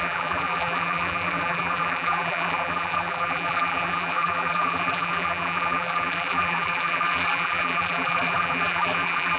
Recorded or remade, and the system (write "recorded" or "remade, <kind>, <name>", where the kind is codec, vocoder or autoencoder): remade, vocoder, BigVGAN v2